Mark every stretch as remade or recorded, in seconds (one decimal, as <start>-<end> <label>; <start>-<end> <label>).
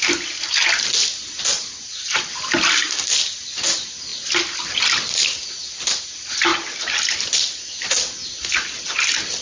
0.0-1.5 recorded; 1.5-2.3 remade; 2.3-9.4 recorded